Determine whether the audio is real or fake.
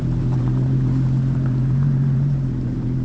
fake